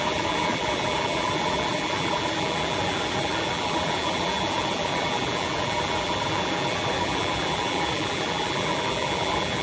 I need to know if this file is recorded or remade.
remade